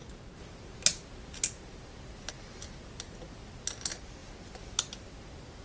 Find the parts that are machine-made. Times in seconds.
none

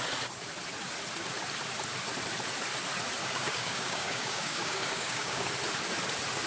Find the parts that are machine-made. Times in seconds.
3.2-5.5 (codec, DAC)

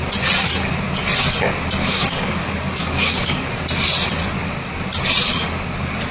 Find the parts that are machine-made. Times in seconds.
1.8-3.5 (codec, DAC)

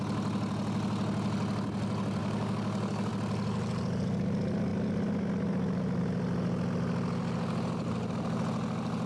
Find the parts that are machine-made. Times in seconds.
2.2-3.1 (codec, DAC)